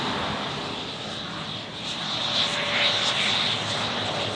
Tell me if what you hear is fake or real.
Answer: real